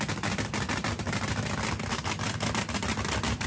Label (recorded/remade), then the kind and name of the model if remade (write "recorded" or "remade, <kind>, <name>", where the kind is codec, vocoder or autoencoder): recorded